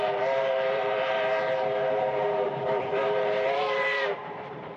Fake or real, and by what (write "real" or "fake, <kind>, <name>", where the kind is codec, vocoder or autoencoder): fake, vocoder, BigVGAN v2